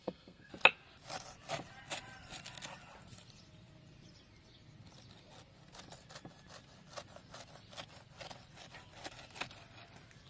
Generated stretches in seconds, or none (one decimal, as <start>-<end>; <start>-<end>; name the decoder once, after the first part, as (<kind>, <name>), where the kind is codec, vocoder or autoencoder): 0.0-0.5 (codec, SNAC)